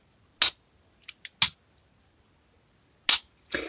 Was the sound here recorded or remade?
recorded